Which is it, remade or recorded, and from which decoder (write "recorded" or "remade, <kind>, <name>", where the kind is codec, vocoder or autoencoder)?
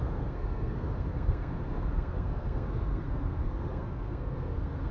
remade, codec, SNAC